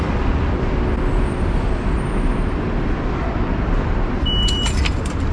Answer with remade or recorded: remade